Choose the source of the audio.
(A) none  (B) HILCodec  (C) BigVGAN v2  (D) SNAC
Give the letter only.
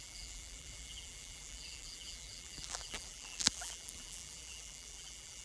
C